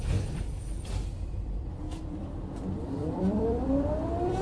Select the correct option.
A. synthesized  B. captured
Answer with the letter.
A